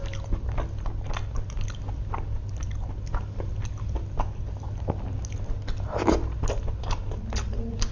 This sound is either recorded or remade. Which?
recorded